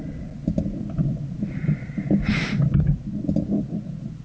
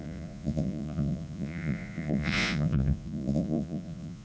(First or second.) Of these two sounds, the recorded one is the first